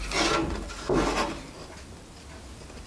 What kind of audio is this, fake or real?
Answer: real